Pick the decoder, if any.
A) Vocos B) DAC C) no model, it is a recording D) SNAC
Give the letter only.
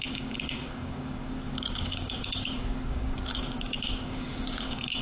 B